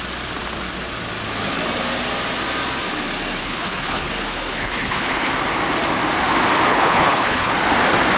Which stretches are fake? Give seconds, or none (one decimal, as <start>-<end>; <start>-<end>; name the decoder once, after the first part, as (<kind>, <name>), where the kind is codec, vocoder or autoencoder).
3.4-4.1 (codec, HILCodec); 4.5-5.3; 6.7-7.5